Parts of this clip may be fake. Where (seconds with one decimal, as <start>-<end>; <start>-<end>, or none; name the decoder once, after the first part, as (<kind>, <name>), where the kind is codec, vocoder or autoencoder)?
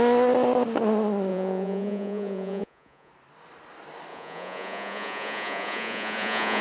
1.3-3.1 (vocoder, Vocos); 4.1-6.6